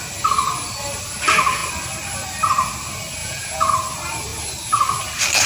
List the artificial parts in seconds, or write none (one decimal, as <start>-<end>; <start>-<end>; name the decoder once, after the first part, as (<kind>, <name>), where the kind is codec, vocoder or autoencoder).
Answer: 3.2-3.7 (vocoder, Vocos)